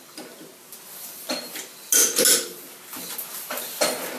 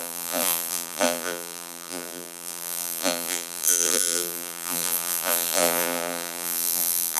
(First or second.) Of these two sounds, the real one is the first